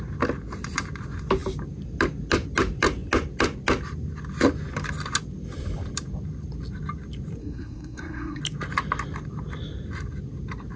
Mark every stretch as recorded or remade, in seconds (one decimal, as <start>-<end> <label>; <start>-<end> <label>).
0.0-7.4 recorded; 7.4-8.4 remade; 8.4-10.8 recorded